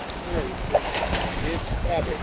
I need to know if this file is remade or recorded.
remade